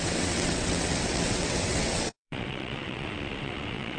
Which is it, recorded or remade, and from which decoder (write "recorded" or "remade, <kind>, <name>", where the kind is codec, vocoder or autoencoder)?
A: remade, vocoder, WaveNeXt